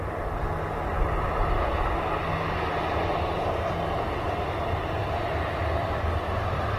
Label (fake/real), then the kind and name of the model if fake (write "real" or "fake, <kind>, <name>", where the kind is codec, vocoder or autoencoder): real